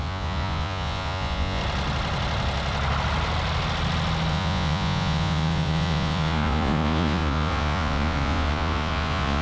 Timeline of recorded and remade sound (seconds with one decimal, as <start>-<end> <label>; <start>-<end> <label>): 0.0-1.6 remade; 1.6-4.3 recorded; 4.3-9.4 remade